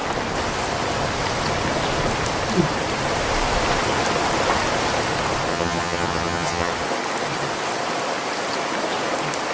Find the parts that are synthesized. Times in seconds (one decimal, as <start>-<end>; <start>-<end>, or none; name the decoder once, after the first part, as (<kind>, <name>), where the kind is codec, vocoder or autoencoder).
5.5-6.7 (vocoder, HiFi-GAN)